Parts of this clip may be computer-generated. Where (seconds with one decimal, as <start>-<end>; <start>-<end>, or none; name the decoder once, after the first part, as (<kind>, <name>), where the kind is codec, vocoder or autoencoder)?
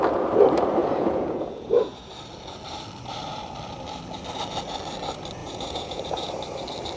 0.8-2.1 (vocoder, Vocos); 5.4-6.3